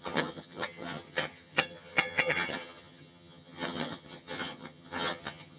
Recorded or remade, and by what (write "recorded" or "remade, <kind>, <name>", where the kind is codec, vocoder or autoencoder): remade, vocoder, HiFi-GAN